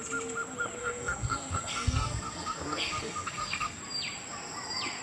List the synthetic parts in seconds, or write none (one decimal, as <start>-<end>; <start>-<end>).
0.8-3.8